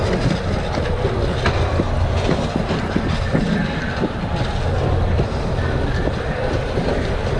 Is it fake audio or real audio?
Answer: fake